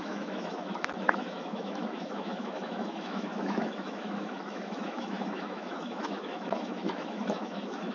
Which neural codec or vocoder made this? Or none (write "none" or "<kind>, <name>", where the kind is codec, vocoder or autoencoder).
autoencoder, DAC-VAE